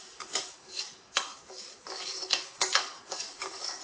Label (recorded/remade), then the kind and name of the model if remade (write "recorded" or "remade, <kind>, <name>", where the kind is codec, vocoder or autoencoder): remade, codec, DAC